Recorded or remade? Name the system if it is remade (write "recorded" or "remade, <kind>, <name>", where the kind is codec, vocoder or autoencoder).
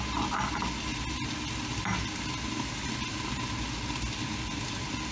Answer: recorded